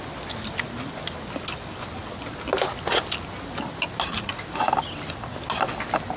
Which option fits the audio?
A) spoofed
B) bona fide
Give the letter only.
B